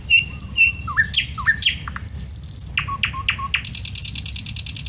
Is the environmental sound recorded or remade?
recorded